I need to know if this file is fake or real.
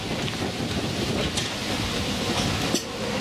real